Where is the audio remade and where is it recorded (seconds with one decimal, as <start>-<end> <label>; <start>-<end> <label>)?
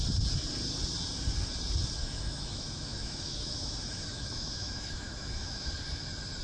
0.0-2.0 recorded; 2.0-5.7 remade; 5.7-6.4 recorded